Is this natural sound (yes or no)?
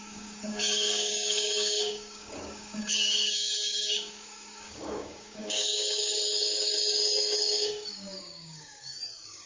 no